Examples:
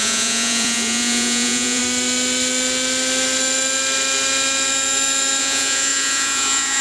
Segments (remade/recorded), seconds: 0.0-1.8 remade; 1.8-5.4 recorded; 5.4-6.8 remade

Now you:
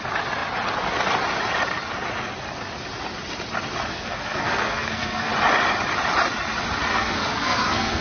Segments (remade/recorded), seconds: 0.0-3.9 recorded; 3.9-5.3 remade; 5.3-6.9 recorded; 6.9-8.0 remade

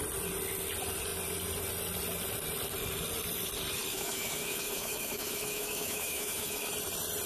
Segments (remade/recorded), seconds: 0.0-3.9 recorded; 3.9-6.7 remade; 6.7-7.3 recorded

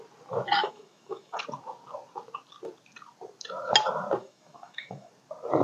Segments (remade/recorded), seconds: 0.0-0.6 recorded; 0.6-1.4 remade; 1.4-4.2 recorded; 4.2-5.1 remade; 5.1-5.6 recorded